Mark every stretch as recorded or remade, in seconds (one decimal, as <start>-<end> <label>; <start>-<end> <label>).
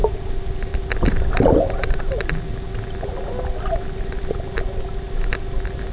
0.0-5.9 recorded